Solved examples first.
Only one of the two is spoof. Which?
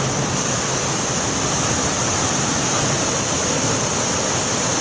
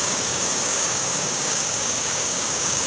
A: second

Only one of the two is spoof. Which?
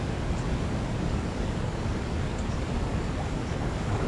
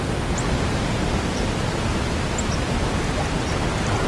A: first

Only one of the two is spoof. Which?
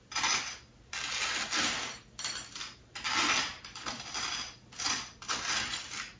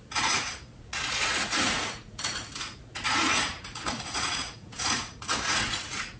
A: second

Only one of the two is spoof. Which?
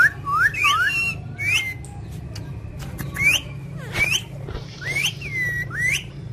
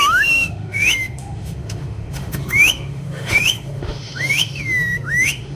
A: second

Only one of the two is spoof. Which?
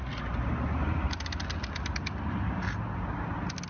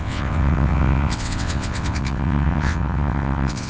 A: second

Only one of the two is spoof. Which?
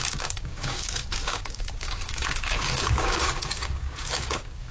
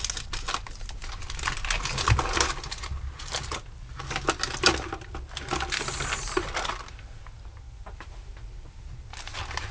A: first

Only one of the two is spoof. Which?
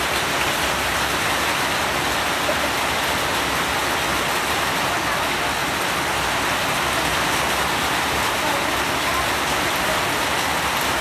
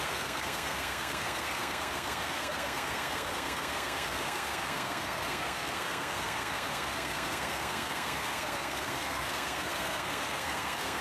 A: second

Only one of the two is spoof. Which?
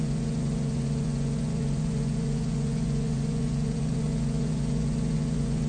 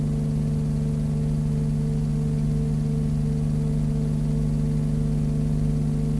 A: first